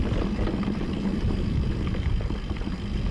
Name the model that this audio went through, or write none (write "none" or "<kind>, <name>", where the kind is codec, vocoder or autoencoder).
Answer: none